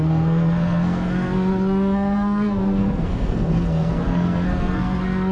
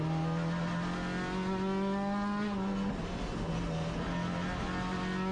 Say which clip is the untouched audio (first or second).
second